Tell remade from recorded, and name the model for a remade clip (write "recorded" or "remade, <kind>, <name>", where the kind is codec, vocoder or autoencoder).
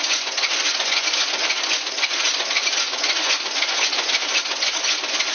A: remade, vocoder, Vocos